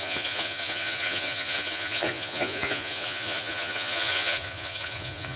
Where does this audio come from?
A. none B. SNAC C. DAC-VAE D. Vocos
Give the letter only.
D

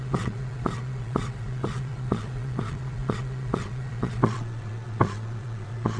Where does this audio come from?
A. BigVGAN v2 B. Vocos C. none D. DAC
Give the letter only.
B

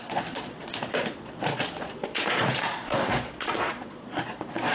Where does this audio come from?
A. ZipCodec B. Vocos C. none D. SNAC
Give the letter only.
B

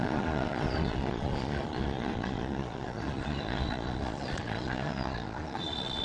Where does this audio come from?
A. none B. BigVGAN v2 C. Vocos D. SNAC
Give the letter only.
C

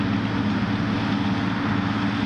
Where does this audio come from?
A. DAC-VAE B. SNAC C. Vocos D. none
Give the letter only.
D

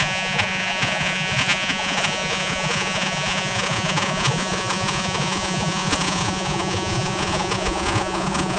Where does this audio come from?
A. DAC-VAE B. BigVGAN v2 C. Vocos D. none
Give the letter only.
C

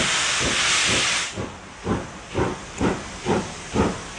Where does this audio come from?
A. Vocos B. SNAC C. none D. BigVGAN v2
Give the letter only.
C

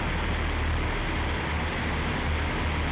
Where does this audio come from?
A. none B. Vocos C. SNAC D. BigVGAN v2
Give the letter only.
A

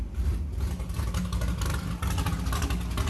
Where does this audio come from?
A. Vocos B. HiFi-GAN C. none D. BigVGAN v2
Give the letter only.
C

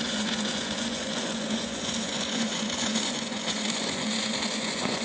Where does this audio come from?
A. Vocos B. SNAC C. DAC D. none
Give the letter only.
A